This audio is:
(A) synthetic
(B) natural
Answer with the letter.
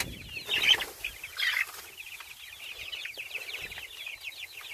B